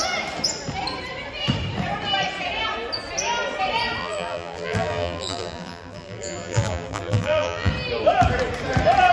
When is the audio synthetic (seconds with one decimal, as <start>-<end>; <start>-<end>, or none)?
4.0-7.7